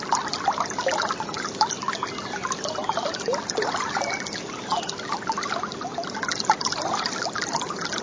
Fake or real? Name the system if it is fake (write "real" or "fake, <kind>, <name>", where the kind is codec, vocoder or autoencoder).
real